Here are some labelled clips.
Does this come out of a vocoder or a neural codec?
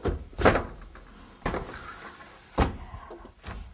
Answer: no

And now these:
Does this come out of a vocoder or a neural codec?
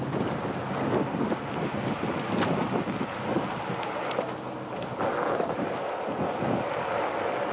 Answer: no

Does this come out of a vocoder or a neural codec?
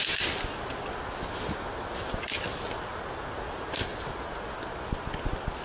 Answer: no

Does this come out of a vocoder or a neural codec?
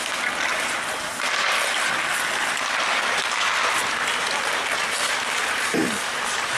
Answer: no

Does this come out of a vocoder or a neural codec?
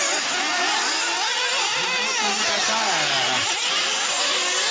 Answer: no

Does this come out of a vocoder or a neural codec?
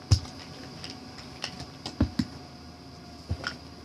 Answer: no